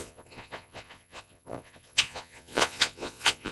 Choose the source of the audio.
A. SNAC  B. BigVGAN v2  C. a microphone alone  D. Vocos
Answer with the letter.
D